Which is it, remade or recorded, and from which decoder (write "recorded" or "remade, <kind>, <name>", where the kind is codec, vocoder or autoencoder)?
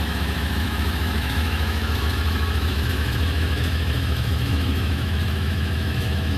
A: remade, autoencoder, DAC-VAE